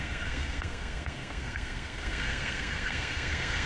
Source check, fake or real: fake